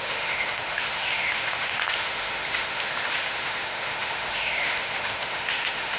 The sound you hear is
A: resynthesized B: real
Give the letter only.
A